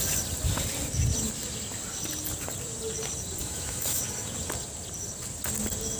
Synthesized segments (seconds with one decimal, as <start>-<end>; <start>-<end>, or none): 3.4-4.0